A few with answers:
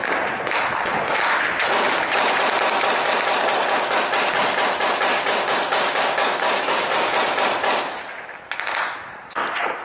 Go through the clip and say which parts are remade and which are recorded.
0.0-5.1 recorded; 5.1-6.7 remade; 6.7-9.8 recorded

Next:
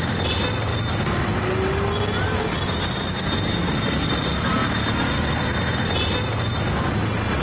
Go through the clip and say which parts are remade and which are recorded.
0.0-7.4 recorded

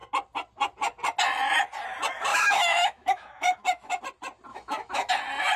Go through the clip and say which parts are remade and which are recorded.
0.0-2.3 recorded; 2.3-4.0 remade; 4.0-4.5 recorded; 4.5-5.1 remade; 5.1-5.6 recorded

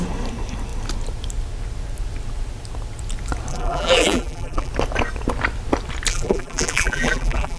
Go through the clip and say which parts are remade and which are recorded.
0.0-3.5 recorded; 3.5-4.7 remade; 4.7-6.1 recorded; 6.1-7.6 remade

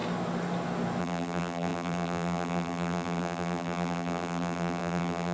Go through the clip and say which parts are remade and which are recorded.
0.0-1.0 recorded; 1.0-5.3 remade

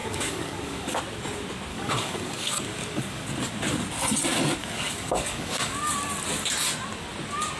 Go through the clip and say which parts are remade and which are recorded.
0.0-1.0 remade; 1.0-1.7 recorded; 1.7-3.3 remade; 3.3-4.6 recorded; 4.6-5.8 remade; 5.8-7.6 recorded